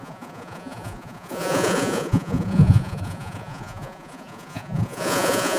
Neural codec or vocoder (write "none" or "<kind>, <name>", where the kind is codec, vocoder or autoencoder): vocoder, Vocos